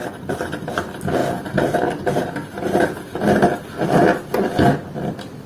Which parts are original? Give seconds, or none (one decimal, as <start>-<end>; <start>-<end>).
0.7-5.5

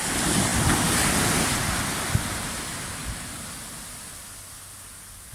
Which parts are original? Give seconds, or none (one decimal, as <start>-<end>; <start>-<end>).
0.0-0.5; 1.5-5.3

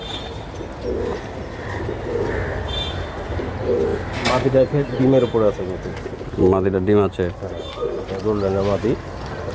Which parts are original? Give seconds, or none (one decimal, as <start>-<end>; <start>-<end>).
0.0-1.1; 1.8-9.5

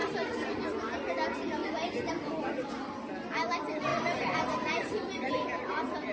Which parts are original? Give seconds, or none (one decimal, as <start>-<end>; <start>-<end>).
0.6-3.9; 5.3-6.1

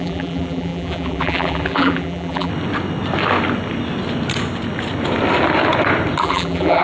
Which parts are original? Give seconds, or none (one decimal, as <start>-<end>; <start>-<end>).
2.5-6.2